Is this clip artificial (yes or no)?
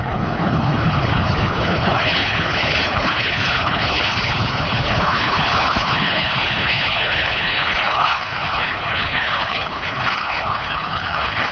yes